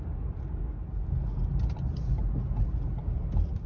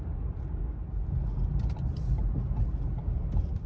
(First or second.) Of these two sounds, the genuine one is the first